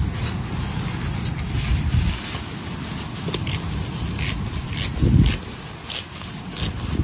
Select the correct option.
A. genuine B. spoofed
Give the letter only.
A